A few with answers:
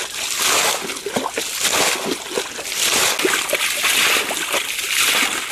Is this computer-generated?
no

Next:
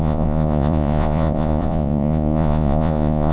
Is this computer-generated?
yes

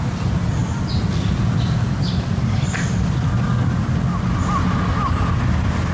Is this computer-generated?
no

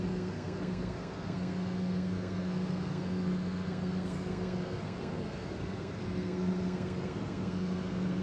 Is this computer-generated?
yes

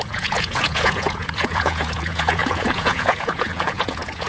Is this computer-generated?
yes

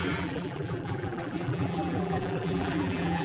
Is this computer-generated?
yes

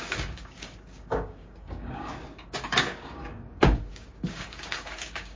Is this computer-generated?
yes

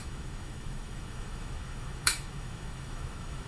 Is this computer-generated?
yes